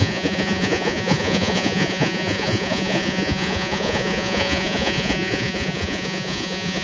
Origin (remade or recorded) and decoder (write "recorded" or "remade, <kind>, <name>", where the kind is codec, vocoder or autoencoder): remade, vocoder, Vocos